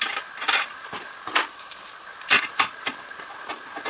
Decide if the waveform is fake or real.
real